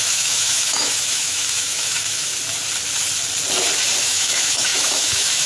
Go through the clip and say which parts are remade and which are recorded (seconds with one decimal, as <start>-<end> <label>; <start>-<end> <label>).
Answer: 0.0-2.3 remade; 2.3-4.0 recorded; 4.0-5.5 remade